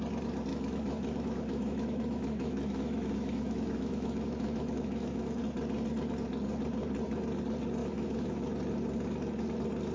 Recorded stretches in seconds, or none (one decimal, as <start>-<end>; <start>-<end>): 0.0-0.5; 5.4-7.8; 8.5-9.9